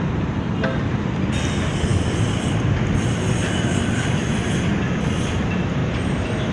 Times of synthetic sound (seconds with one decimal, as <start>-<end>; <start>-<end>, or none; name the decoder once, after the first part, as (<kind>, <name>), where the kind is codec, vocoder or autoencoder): none